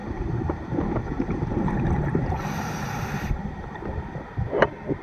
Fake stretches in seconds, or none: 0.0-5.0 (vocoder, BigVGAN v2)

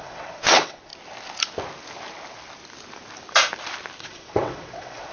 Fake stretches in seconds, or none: 0.0-0.9 (vocoder, WaveNeXt); 4.0-5.1

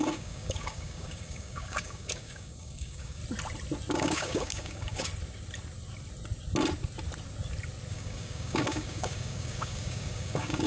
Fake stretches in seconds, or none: 0.0-3.2 (codec, DAC); 3.9-5.1; 7.9-10.7